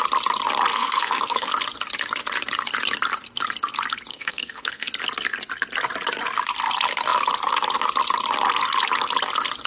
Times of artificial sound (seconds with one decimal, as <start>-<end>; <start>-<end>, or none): 0.7-1.5; 4.1-4.9

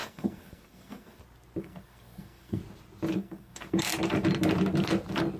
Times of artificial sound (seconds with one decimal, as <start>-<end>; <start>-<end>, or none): 0.0-1.2; 1.6-2.6; 3.1-3.9

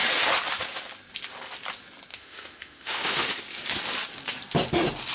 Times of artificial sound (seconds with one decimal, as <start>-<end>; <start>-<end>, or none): 2.1-3.4

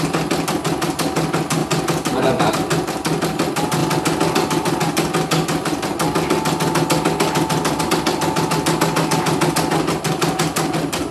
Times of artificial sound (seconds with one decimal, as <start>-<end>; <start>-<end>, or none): none

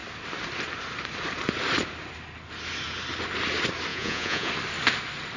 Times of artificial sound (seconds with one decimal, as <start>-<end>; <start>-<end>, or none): 3.9-4.5

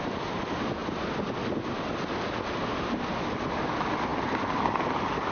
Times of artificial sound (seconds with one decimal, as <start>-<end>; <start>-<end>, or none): none